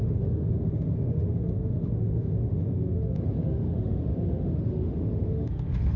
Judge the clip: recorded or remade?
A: remade